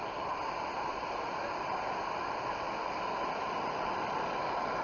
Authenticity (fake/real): real